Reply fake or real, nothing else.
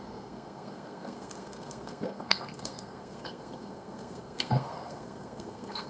fake